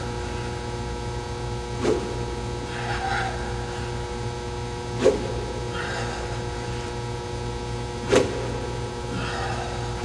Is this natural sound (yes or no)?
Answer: yes